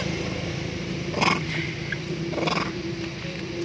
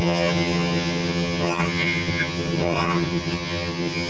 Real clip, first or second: first